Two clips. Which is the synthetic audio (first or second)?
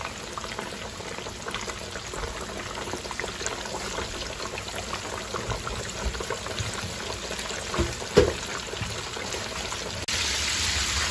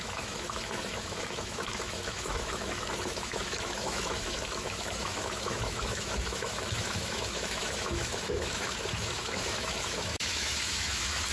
second